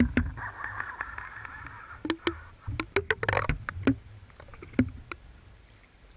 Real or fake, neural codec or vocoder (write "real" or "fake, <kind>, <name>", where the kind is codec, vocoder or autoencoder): real